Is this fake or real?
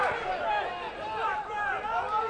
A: real